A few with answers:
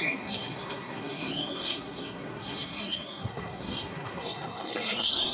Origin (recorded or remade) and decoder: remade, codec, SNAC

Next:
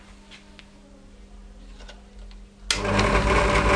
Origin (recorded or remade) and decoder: recorded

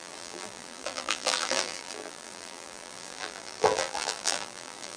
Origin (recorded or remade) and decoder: remade, vocoder, BigVGAN v2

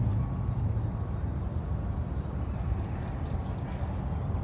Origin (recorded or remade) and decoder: recorded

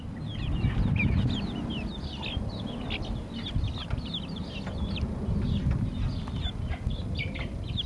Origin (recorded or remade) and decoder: recorded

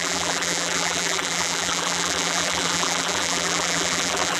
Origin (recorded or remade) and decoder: remade, vocoder, BigVGAN v2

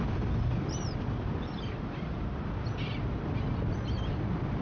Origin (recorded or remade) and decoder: recorded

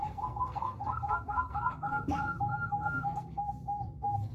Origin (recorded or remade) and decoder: remade, codec, SNAC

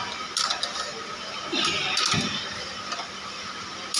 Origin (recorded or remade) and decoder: recorded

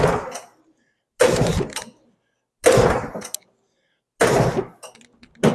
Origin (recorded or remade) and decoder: recorded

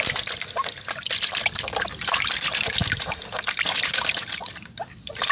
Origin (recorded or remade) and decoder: recorded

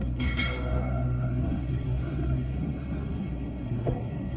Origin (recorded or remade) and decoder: remade, codec, SNAC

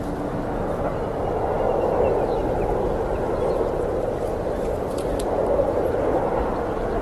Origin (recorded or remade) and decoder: recorded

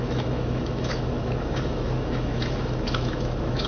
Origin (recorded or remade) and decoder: remade, autoencoder, DAC-VAE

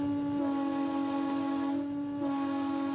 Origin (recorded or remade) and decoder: recorded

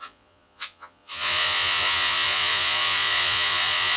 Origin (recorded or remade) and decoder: remade, vocoder, Vocos